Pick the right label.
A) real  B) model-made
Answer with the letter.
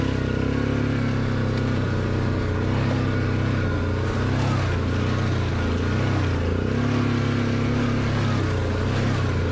A